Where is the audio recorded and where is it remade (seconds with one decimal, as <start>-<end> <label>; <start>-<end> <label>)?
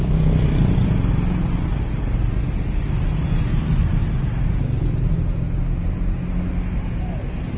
0.0-7.6 recorded